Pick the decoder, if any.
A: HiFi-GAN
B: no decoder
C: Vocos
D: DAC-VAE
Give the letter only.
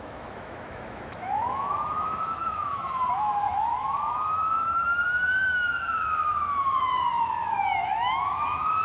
D